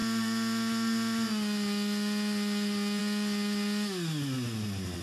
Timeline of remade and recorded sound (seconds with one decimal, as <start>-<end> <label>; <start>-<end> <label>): 0.0-5.0 recorded